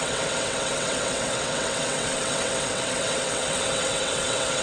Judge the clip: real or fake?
fake